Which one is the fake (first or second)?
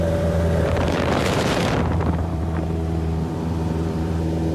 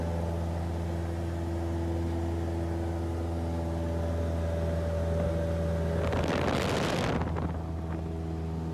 first